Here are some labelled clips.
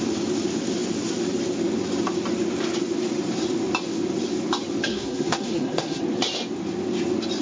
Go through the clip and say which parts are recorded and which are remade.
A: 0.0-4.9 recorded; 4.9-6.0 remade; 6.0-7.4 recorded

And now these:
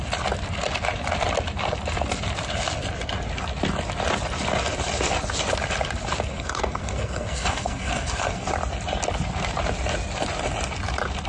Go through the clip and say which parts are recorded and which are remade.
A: 0.0-6.3 recorded; 6.3-8.5 remade; 8.5-11.3 recorded

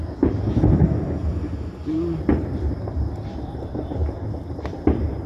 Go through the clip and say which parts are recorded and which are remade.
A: 0.0-5.3 recorded

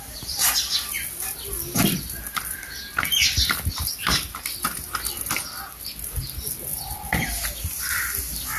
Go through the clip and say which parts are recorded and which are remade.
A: 0.0-8.6 recorded

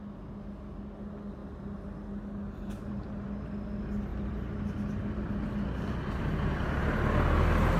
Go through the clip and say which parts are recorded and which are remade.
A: 0.0-7.8 recorded

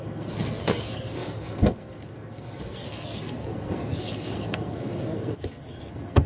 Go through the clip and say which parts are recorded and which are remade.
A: 0.0-6.3 remade

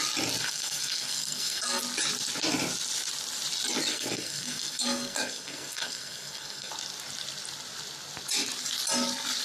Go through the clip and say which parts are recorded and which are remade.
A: 0.0-0.4 recorded; 0.4-1.8 remade; 1.8-3.9 recorded; 3.9-6.7 remade; 6.7-9.4 recorded